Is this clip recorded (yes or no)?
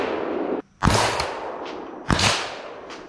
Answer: yes